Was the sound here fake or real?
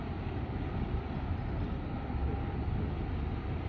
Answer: real